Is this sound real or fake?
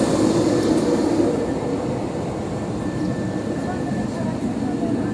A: real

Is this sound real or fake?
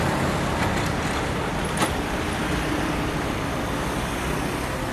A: real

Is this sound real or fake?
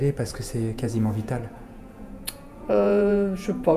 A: fake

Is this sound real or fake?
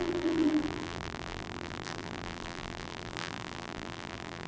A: fake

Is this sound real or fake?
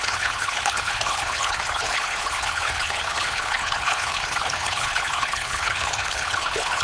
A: fake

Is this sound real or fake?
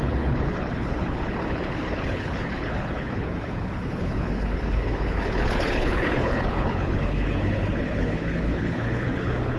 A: fake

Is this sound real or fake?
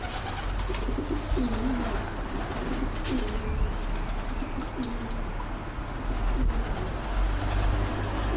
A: real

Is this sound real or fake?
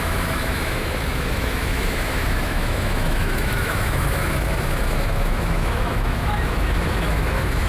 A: fake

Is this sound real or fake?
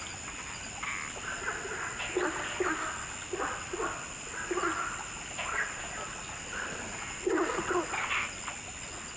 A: real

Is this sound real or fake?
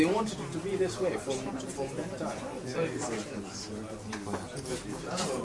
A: fake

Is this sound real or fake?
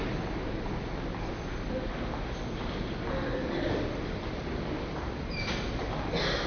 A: real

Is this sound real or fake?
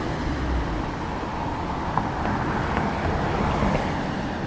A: real